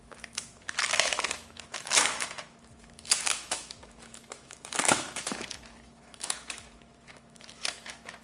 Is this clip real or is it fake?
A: fake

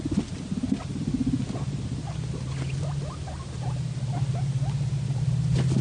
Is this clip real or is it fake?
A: real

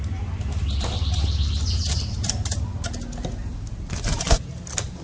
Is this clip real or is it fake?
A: real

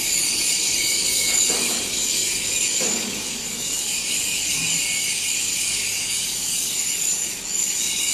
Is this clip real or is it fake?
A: fake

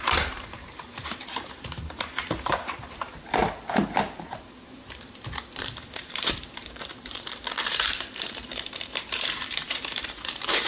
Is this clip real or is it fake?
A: fake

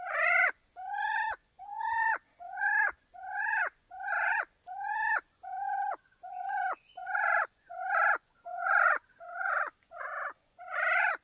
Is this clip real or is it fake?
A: fake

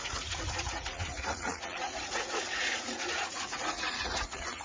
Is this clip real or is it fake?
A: fake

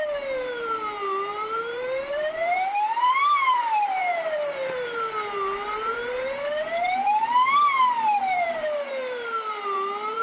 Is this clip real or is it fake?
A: fake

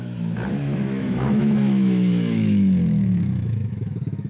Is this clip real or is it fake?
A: fake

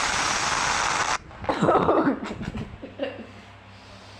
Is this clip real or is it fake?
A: real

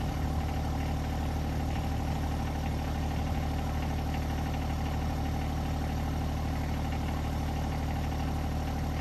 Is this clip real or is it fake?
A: real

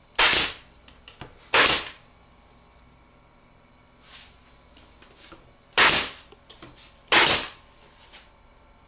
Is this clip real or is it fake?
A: real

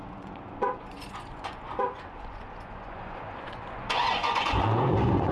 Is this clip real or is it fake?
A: fake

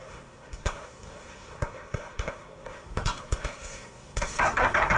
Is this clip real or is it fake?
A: fake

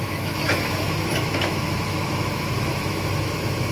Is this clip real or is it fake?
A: fake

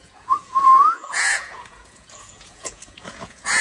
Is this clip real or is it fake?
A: fake